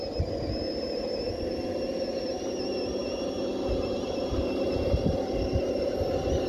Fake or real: real